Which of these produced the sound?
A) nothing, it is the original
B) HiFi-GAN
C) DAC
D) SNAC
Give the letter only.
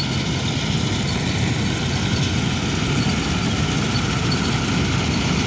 A